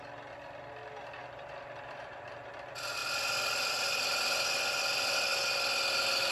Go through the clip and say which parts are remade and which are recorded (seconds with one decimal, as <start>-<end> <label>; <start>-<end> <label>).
0.0-1.2 recorded; 1.2-2.5 remade; 2.5-6.3 recorded